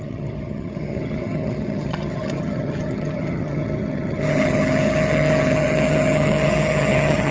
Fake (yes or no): yes